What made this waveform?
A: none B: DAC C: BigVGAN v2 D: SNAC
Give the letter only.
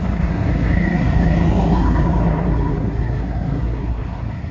D